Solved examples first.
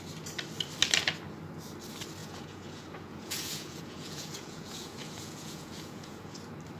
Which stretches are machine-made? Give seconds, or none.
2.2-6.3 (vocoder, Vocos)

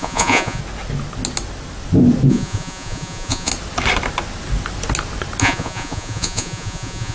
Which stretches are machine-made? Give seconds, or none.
0.0-0.6 (vocoder, Vocos); 2.3-3.5; 5.4-7.1

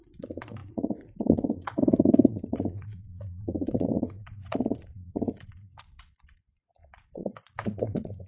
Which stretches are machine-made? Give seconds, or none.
0.0-8.3 (vocoder, Vocos)

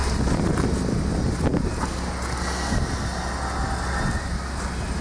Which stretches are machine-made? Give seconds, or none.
none

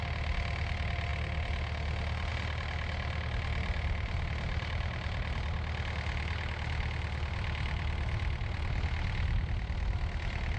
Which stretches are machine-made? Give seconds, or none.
none

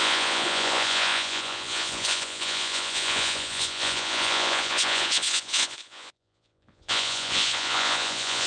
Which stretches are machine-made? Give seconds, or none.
0.0-8.5 (vocoder, Vocos)